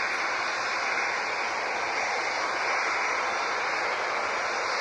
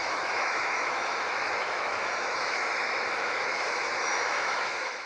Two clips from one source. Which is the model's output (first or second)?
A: second